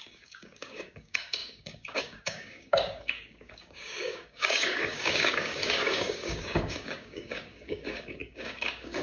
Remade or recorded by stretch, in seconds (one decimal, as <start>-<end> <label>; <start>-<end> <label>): 0.0-9.0 remade